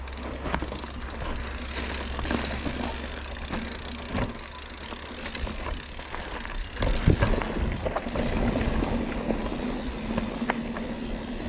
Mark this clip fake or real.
real